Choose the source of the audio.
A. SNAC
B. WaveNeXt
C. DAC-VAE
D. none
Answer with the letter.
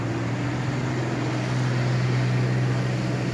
D